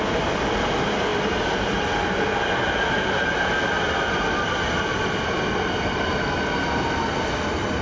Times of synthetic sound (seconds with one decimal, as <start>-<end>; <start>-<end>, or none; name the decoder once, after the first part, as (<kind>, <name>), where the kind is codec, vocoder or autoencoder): none